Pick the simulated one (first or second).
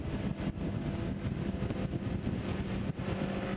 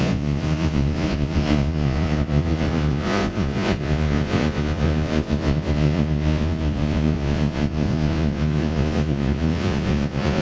second